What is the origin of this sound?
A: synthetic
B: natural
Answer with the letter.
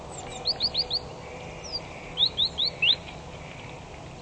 B